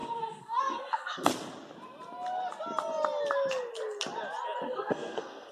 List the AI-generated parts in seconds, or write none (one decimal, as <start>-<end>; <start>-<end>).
0.0-1.3; 4.6-5.5